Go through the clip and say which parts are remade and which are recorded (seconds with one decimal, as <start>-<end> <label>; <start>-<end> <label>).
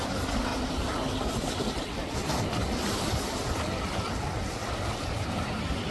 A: 0.0-0.5 recorded; 0.5-1.3 remade; 1.3-4.6 recorded; 4.6-5.4 remade; 5.4-5.9 recorded